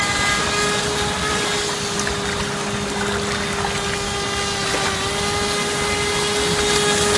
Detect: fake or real real